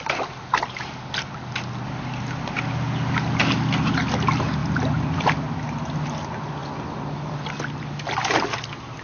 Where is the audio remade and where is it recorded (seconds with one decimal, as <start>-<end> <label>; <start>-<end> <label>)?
0.0-4.6 recorded; 4.6-5.6 remade; 5.6-6.6 recorded; 6.6-7.5 remade; 7.5-9.0 recorded